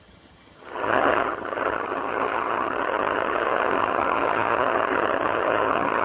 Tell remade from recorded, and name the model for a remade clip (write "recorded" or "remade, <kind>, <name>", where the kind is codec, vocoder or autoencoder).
remade, vocoder, HiFi-GAN